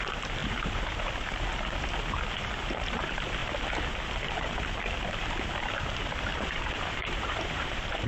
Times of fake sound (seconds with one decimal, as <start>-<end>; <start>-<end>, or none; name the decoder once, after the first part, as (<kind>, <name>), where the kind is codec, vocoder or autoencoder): 0.4-1.1 (vocoder, BigVGAN v2); 6.3-8.1